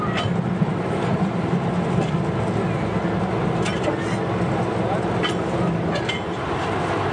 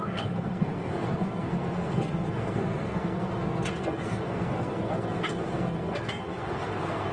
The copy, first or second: second